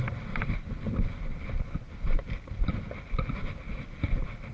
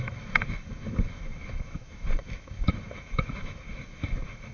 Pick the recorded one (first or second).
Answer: first